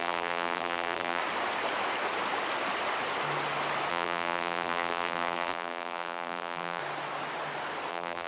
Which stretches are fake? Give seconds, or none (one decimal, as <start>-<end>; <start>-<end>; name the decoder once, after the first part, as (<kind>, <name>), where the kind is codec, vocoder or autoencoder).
0.0-1.2 (vocoder, BigVGAN v2); 3.9-6.8; 7.9-8.3